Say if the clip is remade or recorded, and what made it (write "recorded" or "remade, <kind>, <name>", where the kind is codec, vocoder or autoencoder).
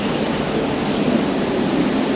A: recorded